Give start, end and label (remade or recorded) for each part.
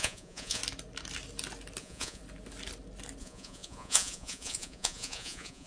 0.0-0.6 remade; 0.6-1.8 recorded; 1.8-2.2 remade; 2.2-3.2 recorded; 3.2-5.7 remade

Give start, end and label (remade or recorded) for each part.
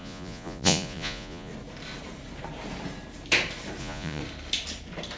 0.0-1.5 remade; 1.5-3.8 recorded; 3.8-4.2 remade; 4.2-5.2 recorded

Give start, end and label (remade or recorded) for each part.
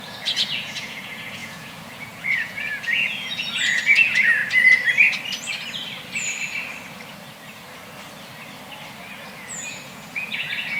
0.0-4.4 remade; 4.4-9.7 recorded; 9.7-10.8 remade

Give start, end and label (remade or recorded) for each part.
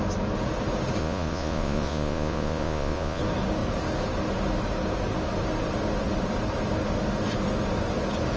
0.0-1.0 recorded; 1.0-3.2 remade; 3.2-8.4 recorded